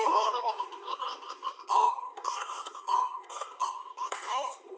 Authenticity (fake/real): fake